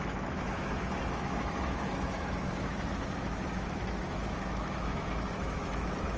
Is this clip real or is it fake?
fake